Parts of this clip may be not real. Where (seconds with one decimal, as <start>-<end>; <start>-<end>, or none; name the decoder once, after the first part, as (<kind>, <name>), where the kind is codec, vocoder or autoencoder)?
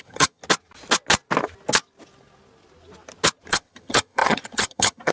0.0-0.4 (vocoder, HiFi-GAN); 3.5-5.1